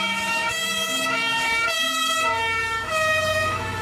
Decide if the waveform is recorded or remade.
remade